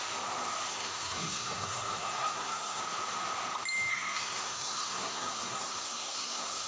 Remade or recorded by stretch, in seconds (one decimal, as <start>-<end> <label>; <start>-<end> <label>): 0.0-0.7 recorded; 0.7-2.8 remade; 2.8-3.9 recorded; 3.9-6.7 remade